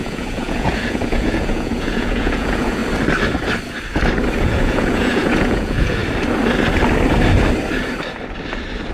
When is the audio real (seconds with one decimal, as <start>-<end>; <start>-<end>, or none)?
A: 2.8-4.4; 6.0-8.9

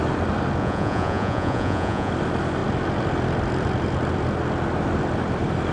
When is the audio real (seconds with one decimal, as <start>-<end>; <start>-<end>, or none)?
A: 0.0-0.6; 2.1-5.7

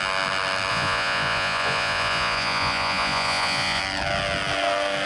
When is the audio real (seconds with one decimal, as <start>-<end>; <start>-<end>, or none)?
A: 0.0-0.7; 3.8-5.1

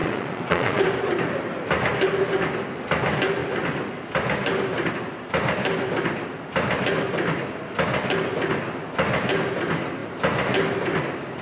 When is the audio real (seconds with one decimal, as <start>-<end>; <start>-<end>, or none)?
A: 0.8-11.4

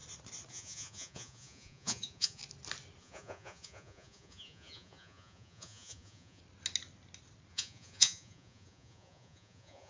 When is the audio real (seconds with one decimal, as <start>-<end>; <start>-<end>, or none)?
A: 0.0-0.5; 2.4-3.0; 6.4-7.5

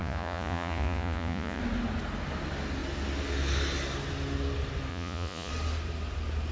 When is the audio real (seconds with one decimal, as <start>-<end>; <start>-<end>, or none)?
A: 1.6-4.9; 5.5-6.5